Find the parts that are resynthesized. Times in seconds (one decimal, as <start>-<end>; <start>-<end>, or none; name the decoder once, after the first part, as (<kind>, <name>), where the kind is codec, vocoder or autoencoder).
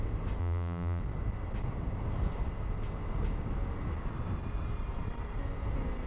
0.4-1.0 (vocoder, BigVGAN v2)